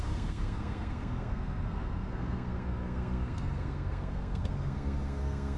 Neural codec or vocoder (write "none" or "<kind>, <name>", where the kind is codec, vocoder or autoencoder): codec, SNAC